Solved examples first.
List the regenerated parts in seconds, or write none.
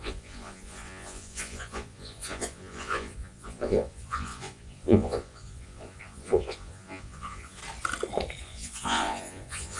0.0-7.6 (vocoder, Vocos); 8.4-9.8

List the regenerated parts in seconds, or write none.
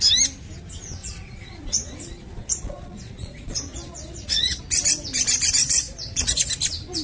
1.0-4.6 (vocoder, Vocos); 5.6-6.5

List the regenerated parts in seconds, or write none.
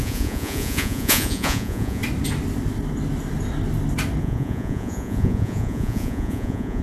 0.0-2.0 (vocoder, Vocos); 4.2-6.8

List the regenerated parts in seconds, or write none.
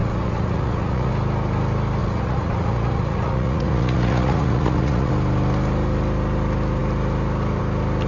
0.0-1.1 (vocoder, Vocos); 2.0-5.1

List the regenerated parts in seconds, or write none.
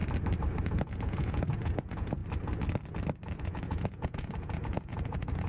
0.6-2.2 (vocoder, Vocos); 3.4-5.5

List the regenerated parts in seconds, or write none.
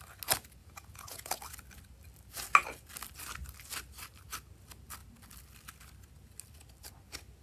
0.6-1.4 (vocoder, Vocos)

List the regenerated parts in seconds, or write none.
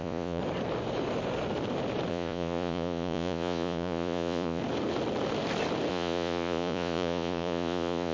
0.0-0.4 (vocoder, Vocos); 2.1-4.6; 5.9-8.1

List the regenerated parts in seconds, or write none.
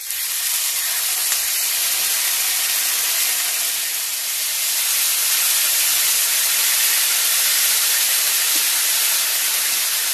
none